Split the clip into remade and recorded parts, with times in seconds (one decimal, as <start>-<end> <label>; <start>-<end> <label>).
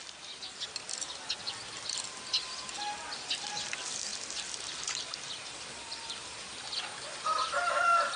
0.0-8.2 recorded